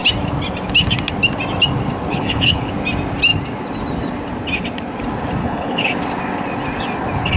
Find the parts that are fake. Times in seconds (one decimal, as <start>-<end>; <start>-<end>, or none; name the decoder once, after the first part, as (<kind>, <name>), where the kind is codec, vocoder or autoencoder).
2.1-2.7 (codec, HILCodec); 5.4-5.9